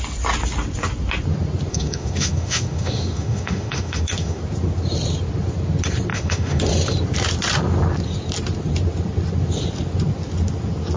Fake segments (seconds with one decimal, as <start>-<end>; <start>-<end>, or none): 1.7-4.4; 6.1-6.6